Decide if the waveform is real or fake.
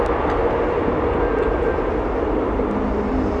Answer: real